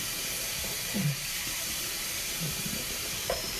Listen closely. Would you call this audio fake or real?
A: fake